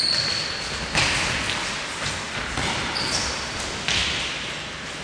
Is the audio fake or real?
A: real